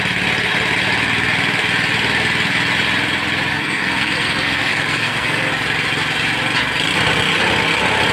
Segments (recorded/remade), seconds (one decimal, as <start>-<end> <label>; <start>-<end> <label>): 0.0-3.5 recorded; 3.5-5.5 remade; 5.5-8.1 recorded